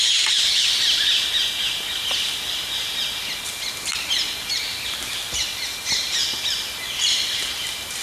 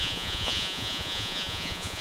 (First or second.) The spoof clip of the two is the second